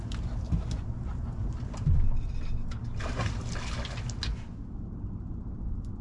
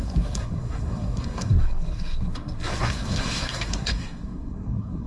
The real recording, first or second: first